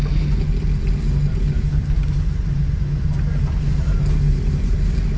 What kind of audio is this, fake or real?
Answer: real